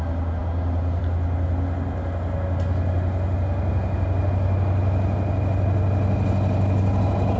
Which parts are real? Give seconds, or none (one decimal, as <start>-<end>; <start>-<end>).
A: 0.0-7.4